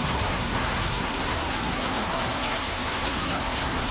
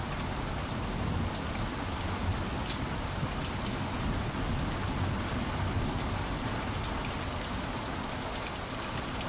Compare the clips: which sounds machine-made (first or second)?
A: first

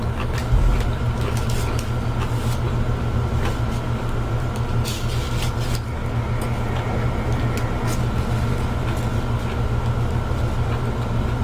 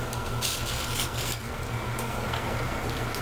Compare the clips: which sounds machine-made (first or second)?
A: second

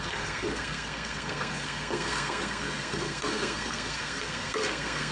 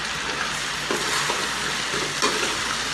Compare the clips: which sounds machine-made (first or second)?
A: first